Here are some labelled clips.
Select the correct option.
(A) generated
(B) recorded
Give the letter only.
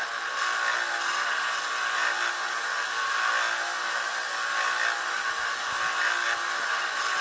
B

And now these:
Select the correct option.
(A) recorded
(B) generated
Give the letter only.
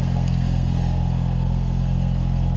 B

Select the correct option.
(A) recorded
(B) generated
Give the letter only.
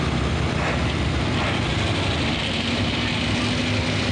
A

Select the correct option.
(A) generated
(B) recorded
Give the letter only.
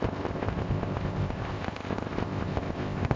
A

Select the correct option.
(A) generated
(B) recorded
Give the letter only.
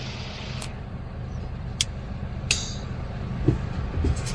B